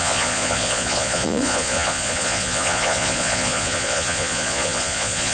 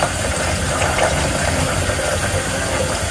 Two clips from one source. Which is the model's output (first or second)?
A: first